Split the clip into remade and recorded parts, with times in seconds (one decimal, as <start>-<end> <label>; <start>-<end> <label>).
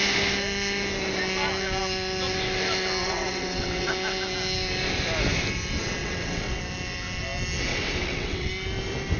0.0-3.0 recorded; 3.0-3.9 remade; 3.9-6.0 recorded; 6.0-6.6 remade; 6.6-7.7 recorded; 7.7-8.5 remade; 8.5-9.2 recorded